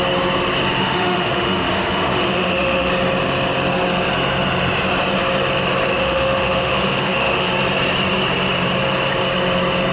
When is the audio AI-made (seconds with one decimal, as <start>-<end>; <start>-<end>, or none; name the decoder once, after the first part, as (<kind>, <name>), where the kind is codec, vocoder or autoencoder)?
0.8-2.9 (autoencoder, DAC-VAE); 5.9-7.5